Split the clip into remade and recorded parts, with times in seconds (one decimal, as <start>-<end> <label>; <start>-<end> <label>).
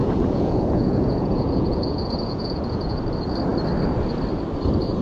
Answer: 0.0-3.0 remade; 3.0-5.0 recorded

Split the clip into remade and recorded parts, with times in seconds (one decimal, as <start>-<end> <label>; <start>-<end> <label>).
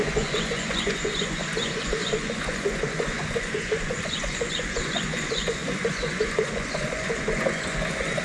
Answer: 0.0-8.2 remade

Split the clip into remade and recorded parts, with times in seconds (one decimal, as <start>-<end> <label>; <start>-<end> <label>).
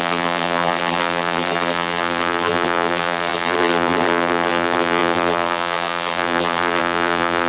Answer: 0.0-7.5 remade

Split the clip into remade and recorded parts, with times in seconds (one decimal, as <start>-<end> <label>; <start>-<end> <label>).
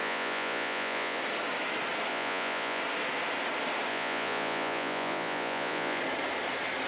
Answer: 0.0-1.2 remade; 1.2-2.1 recorded; 2.1-2.8 remade; 2.8-3.9 recorded; 3.9-6.0 remade; 6.0-6.9 recorded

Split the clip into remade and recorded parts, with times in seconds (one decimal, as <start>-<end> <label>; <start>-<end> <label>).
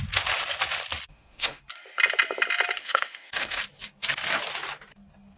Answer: 0.0-1.1 recorded; 1.1-1.6 remade; 1.6-2.8 recorded; 2.8-3.6 remade; 3.6-5.4 recorded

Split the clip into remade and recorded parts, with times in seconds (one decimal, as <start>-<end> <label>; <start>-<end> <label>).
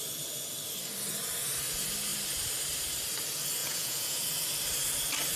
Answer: 0.0-3.6 recorded; 3.6-4.2 remade; 4.2-5.4 recorded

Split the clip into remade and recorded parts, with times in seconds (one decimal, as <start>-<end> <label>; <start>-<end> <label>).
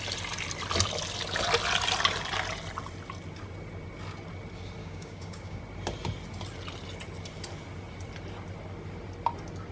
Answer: 0.0-4.8 recorded; 4.8-5.6 remade; 5.6-9.7 recorded